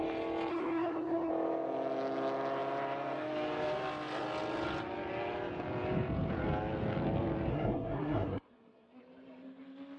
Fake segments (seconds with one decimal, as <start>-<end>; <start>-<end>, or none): 0.5-1.3; 7.5-9.0